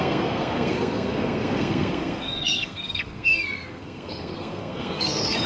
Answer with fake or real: fake